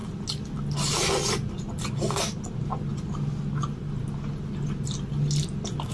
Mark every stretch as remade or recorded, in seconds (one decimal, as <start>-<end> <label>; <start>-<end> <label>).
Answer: 0.0-5.9 recorded